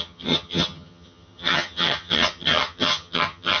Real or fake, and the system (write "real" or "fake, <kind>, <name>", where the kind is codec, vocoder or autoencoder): fake, vocoder, HiFi-GAN